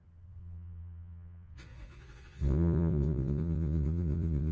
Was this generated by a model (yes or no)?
yes